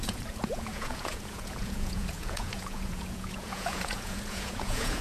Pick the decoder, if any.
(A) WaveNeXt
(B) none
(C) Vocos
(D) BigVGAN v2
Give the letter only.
C